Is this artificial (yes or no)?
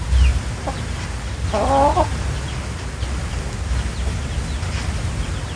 no